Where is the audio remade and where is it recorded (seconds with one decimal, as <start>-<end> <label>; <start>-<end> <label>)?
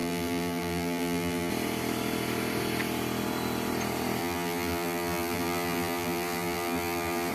0.0-1.5 remade; 1.5-4.2 recorded; 4.2-7.3 remade